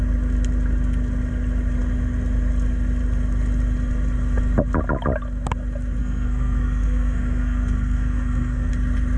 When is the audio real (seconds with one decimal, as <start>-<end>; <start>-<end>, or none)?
0.0-6.0; 8.7-9.2